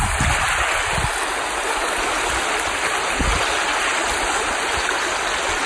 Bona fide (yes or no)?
yes